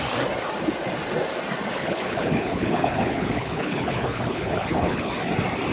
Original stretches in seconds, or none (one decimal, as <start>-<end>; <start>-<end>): 0.0-1.7; 5.1-5.7